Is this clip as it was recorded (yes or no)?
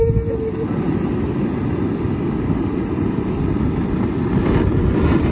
yes